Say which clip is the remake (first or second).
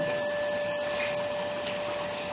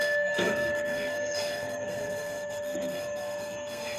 second